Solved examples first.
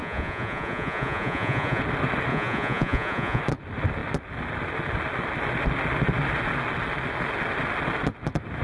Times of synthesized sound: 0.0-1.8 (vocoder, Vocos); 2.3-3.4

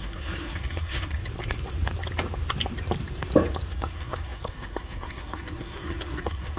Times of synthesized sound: 0.0-1.2 (codec, SNAC); 3.7-6.6